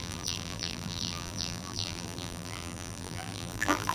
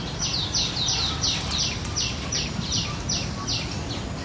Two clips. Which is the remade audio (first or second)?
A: first